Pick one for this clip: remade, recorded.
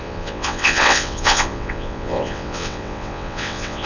remade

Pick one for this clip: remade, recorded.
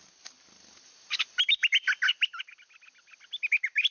recorded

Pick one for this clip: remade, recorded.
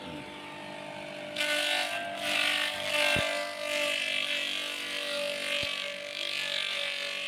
recorded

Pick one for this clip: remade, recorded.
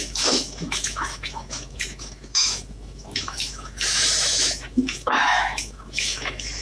remade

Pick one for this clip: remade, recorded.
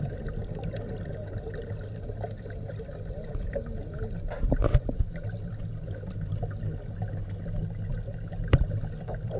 recorded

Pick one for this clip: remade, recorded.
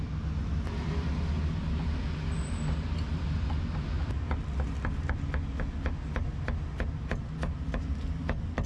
recorded